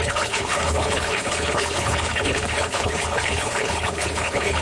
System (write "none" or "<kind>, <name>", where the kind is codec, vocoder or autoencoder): codec, HILCodec